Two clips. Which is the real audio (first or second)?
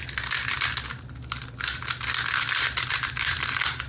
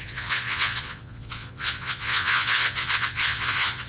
first